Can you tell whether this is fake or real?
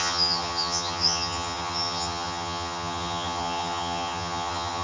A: fake